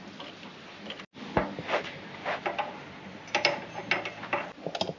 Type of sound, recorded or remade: recorded